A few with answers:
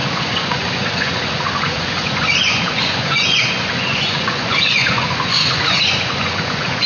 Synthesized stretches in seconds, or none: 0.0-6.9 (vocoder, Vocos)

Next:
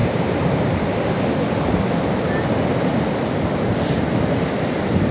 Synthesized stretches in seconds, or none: 0.0-1.0 (vocoder, BigVGAN v2)

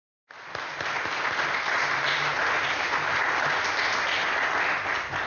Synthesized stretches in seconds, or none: none

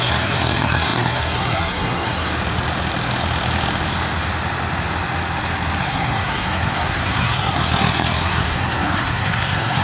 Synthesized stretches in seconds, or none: 0.0-2.3 (codec, SNAC); 5.8-9.8

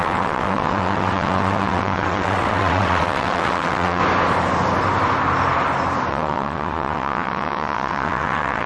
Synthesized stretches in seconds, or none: 0.0-4.0 (vocoder, WaveNeXt); 6.1-8.7